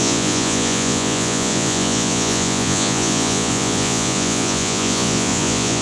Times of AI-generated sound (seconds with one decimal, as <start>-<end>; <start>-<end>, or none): 0.0-5.8